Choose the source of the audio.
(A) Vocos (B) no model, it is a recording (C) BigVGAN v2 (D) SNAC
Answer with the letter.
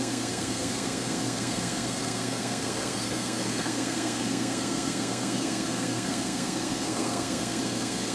D